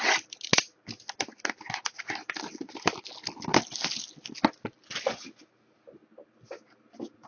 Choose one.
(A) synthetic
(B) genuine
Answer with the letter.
B